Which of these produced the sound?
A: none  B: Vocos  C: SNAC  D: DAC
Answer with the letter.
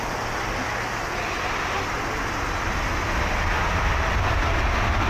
A